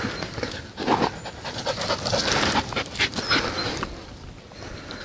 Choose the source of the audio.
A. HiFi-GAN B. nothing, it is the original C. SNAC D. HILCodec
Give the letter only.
B